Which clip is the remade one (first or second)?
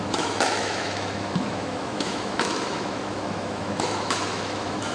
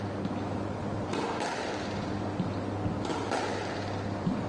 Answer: first